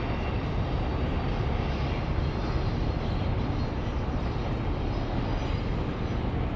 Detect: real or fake real